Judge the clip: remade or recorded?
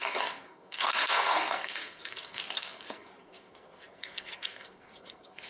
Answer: remade